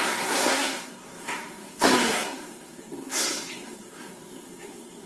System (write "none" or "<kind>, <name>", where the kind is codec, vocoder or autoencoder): codec, SNAC